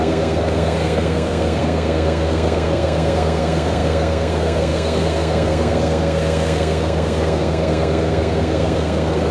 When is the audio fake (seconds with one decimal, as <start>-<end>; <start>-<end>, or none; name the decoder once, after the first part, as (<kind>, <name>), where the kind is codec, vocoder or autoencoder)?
0.0-9.3 (codec, SNAC)